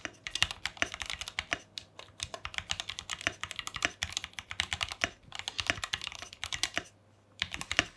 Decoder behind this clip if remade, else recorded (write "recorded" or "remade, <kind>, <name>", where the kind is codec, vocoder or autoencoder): recorded